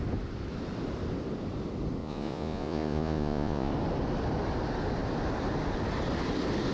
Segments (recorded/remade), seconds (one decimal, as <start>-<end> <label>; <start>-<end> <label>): 0.0-2.0 recorded; 2.0-3.7 remade; 3.7-6.7 recorded